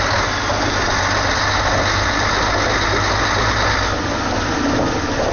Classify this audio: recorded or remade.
recorded